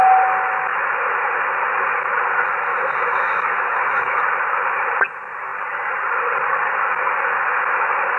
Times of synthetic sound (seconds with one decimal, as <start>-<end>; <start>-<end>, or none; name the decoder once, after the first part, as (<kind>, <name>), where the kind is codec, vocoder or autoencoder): 2.7-4.2 (autoencoder, DAC-VAE)